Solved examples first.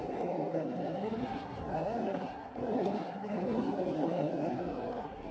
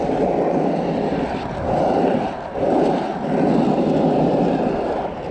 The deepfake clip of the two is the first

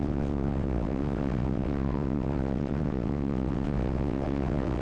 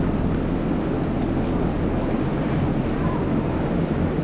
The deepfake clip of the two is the first